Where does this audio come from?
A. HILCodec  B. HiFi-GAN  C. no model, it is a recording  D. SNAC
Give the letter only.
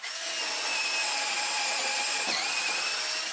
C